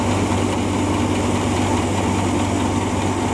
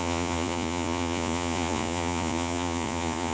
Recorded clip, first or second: first